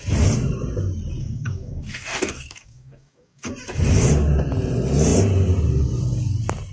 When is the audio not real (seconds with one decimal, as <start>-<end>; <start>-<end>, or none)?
1.2-3.5

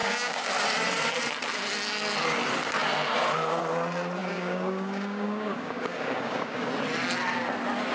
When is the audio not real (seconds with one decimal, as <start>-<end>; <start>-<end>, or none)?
0.0-0.5; 4.2-6.7

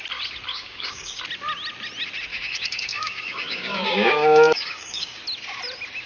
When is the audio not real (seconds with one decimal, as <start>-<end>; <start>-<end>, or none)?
0.5-1.2; 2.3-5.2

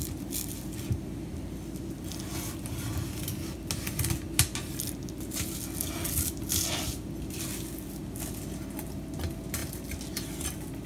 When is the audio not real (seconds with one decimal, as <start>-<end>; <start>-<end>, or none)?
none

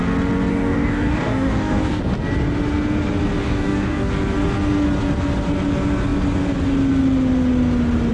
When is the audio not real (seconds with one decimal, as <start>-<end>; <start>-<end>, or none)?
0.5-2.0; 3.4-4.1